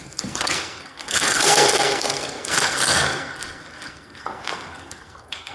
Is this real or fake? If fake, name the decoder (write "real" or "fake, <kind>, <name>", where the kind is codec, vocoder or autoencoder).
fake, codec, SNAC